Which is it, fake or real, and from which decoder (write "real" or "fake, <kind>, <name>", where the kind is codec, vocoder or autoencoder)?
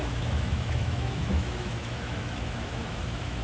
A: fake, autoencoder, DAC-VAE